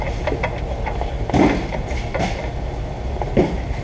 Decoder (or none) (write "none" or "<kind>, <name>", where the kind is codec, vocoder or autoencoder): none